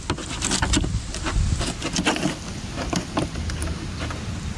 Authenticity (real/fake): real